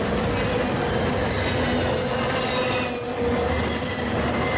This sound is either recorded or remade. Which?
recorded